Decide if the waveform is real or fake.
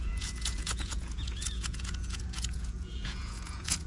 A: fake